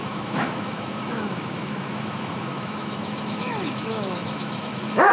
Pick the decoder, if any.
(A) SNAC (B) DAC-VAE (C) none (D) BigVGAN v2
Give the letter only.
B